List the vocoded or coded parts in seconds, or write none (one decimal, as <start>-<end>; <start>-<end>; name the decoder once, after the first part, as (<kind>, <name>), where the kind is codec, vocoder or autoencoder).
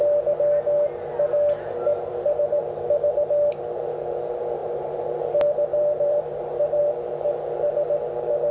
4.6-5.2 (vocoder, BigVGAN v2); 5.7-6.8